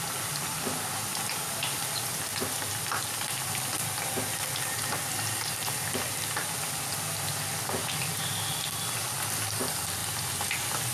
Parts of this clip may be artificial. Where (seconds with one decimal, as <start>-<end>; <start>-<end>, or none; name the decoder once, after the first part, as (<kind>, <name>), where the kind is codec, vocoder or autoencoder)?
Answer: 0.0-1.1 (vocoder, BigVGAN v2); 2.7-10.0